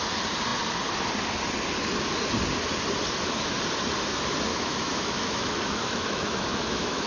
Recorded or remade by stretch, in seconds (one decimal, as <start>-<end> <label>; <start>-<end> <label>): 0.0-4.5 recorded; 4.5-7.1 remade